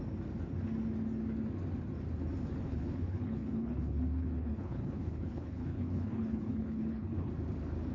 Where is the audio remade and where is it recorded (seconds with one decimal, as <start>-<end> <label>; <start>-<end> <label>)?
0.0-2.6 recorded; 2.6-7.3 remade; 7.3-7.9 recorded